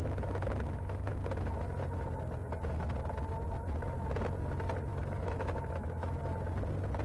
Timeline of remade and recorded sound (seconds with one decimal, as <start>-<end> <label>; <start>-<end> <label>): 0.0-1.1 remade; 1.1-4.9 recorded; 4.9-6.2 remade; 6.2-7.0 recorded